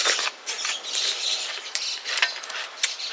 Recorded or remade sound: remade